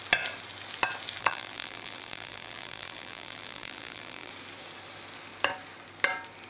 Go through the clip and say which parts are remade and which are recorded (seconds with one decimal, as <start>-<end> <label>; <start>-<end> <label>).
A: 0.0-1.2 recorded; 1.2-4.3 remade; 4.3-6.5 recorded

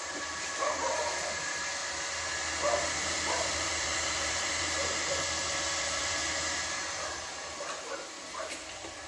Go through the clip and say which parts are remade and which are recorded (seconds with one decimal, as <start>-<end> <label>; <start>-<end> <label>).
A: 0.0-1.8 remade; 1.8-3.0 recorded; 3.0-6.2 remade; 6.2-8.1 recorded; 8.1-9.1 remade

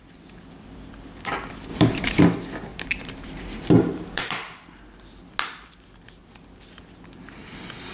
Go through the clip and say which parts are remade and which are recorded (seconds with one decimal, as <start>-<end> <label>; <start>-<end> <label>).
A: 0.0-1.7 recorded; 1.7-2.2 remade; 2.2-2.7 recorded; 2.7-4.8 remade; 4.8-7.9 recorded

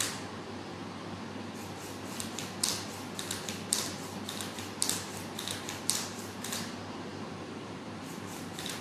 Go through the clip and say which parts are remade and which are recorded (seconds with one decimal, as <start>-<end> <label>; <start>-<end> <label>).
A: 0.0-0.8 remade; 0.8-5.8 recorded; 5.8-8.8 remade